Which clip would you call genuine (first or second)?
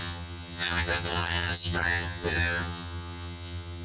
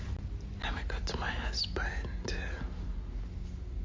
second